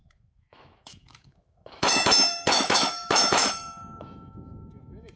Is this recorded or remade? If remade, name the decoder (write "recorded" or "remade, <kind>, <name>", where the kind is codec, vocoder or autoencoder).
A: remade, autoencoder, DAC-VAE